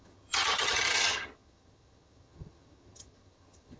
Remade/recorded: remade